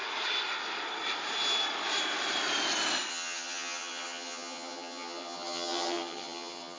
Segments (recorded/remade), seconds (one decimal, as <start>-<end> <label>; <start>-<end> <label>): 0.0-3.1 recorded; 3.1-6.8 remade